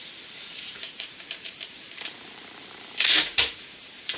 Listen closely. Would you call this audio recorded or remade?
remade